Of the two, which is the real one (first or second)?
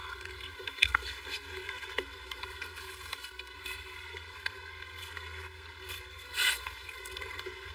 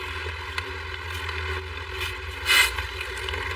second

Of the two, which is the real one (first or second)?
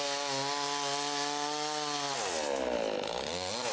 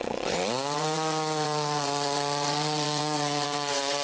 first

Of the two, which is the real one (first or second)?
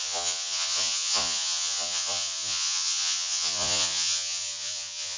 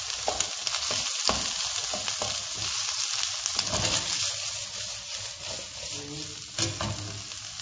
second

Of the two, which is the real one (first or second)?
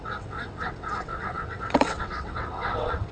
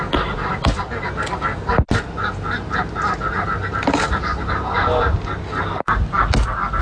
second